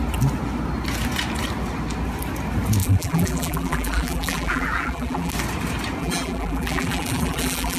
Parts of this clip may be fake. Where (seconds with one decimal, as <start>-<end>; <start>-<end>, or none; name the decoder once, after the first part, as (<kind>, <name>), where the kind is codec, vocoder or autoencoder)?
2.8-5.3 (vocoder, BigVGAN v2); 6.0-7.8